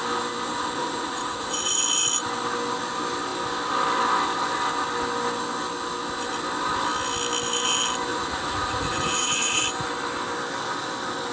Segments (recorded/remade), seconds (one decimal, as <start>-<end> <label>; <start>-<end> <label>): 0.0-0.8 recorded; 0.8-1.8 remade; 1.8-8.1 recorded; 8.1-9.6 remade; 9.6-11.3 recorded